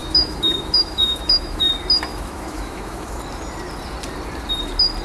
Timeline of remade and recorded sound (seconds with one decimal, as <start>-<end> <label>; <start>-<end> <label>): 0.0-1.7 remade; 1.7-2.1 recorded; 2.1-3.2 remade; 3.2-5.0 recorded